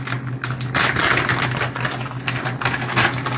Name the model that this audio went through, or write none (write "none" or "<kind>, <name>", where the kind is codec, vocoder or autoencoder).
none